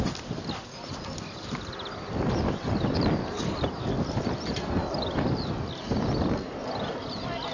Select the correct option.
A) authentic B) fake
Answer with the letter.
A